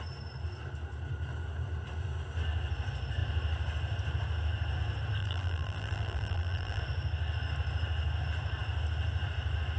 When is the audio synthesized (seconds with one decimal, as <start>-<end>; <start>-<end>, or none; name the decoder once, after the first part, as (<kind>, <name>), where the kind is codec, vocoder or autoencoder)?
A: 5.2-6.8 (vocoder, BigVGAN v2)